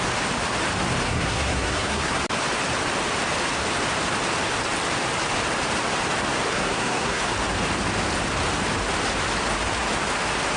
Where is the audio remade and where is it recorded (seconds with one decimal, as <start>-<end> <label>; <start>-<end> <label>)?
0.0-1.0 recorded; 1.0-2.2 remade; 2.2-6.5 recorded; 6.5-7.2 remade; 7.2-10.6 recorded